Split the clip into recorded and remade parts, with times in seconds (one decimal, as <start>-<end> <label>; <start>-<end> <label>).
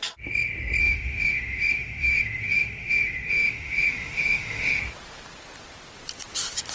0.0-0.8 recorded; 0.8-4.8 remade; 4.8-6.7 recorded